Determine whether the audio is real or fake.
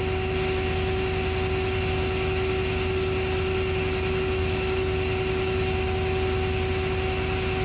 real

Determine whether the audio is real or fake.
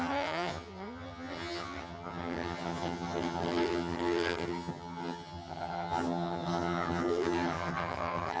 fake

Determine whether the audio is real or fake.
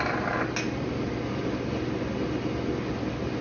real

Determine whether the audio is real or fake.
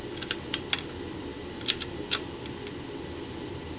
real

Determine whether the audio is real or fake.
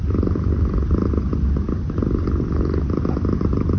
real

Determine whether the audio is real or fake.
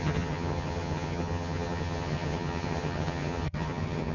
fake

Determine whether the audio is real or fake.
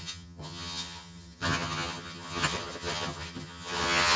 fake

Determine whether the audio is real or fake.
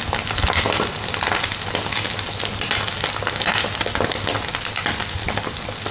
real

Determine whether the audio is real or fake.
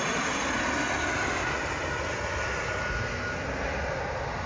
real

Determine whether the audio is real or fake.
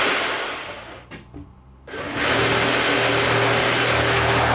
real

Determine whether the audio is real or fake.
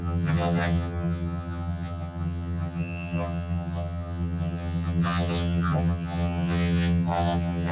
fake